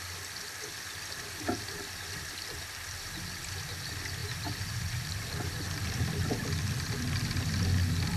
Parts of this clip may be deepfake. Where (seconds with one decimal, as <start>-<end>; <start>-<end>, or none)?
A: none